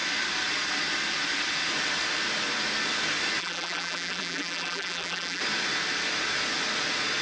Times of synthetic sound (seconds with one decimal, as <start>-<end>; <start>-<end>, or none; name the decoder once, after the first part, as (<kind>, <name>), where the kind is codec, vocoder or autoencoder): 3.4-5.4 (vocoder, BigVGAN v2)